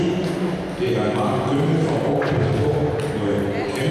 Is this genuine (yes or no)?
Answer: yes